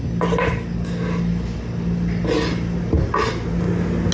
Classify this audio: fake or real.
real